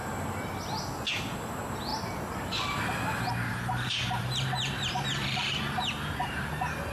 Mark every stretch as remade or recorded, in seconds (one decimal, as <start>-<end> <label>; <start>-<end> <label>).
0.0-3.5 recorded; 3.5-6.5 remade; 6.5-6.9 recorded